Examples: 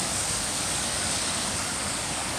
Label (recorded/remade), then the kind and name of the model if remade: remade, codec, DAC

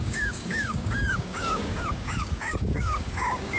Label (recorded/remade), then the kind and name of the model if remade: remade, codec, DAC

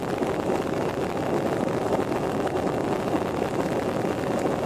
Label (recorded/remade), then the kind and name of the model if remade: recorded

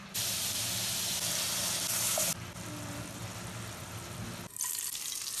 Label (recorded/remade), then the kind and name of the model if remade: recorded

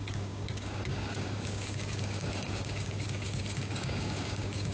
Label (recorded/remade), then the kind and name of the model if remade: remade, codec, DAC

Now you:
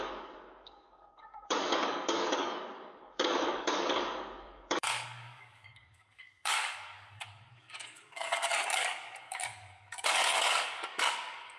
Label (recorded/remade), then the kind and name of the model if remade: remade, codec, DAC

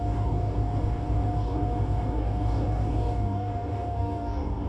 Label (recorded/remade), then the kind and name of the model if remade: remade, codec, DAC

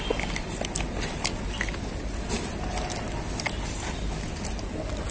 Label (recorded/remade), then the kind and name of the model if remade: recorded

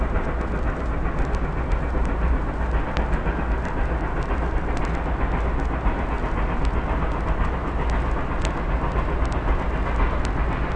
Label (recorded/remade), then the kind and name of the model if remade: recorded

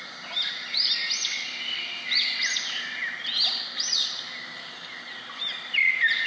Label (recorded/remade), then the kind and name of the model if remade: recorded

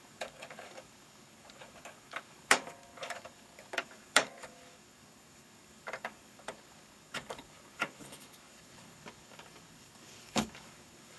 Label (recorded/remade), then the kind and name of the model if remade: remade, codec, DAC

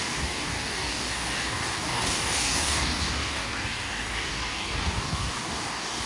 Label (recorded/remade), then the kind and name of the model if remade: remade, codec, DAC